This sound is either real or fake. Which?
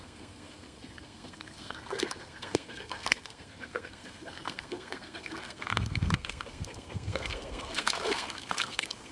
fake